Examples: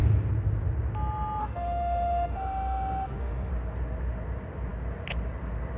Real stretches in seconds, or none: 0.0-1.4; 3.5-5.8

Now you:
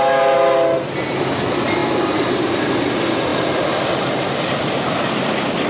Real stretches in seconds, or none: 0.0-1.8; 2.4-5.7

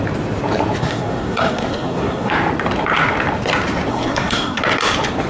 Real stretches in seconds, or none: 0.0-0.8; 2.3-3.9; 4.6-5.3

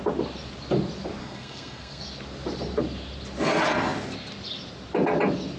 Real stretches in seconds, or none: 0.0-1.2; 2.0-5.6

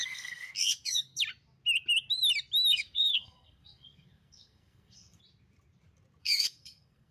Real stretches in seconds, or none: 1.2-2.7; 5.2-6.2